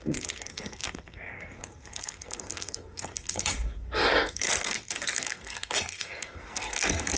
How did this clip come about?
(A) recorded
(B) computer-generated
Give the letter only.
B